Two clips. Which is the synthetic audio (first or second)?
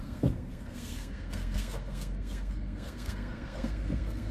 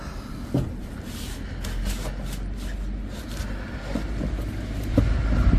first